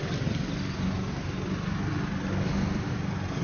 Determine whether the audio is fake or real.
real